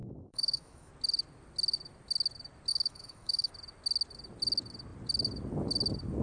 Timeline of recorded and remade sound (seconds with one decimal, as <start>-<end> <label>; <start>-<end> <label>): 0.0-0.9 remade; 0.9-2.7 recorded; 2.7-3.5 remade; 3.5-6.2 recorded